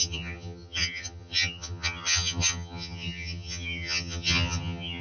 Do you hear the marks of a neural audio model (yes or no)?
yes